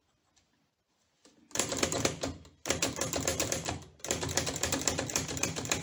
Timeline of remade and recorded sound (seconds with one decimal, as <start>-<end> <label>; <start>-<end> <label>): 0.0-5.8 recorded